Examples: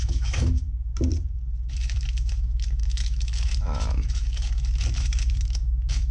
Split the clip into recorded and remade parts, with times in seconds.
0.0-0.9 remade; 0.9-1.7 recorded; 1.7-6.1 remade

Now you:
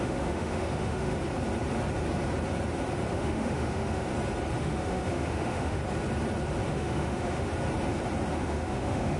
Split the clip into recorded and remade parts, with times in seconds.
0.0-1.1 remade; 1.1-3.1 recorded; 3.1-4.1 remade; 4.1-4.6 recorded; 4.6-5.8 remade; 5.8-6.7 recorded; 6.7-7.5 remade; 7.5-8.3 recorded; 8.3-9.2 remade

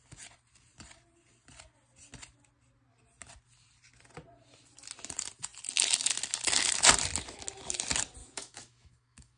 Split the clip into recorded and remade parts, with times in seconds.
0.0-8.2 recorded; 8.2-9.4 remade

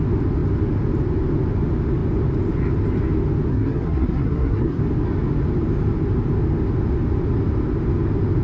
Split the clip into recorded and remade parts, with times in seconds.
0.0-3.5 recorded; 3.5-4.8 remade; 4.8-8.4 recorded

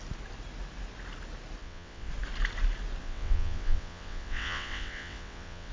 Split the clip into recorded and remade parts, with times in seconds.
0.0-1.6 recorded; 1.6-2.1 remade; 2.1-3.0 recorded; 3.0-5.7 remade

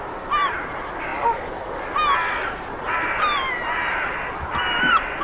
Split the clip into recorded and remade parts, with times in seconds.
0.0-5.2 recorded

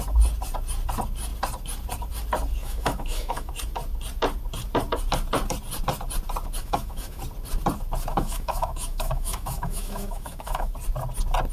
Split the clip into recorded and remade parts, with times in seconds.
0.0-2.6 recorded; 2.6-3.5 remade; 3.5-6.6 recorded; 6.6-7.2 remade; 7.2-8.1 recorded; 8.1-10.7 remade; 10.7-11.5 recorded

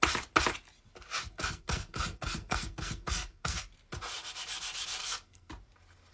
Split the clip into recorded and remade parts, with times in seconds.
0.0-1.2 recorded; 1.2-3.7 remade; 3.7-5.0 recorded; 5.0-5.5 remade; 5.5-6.1 recorded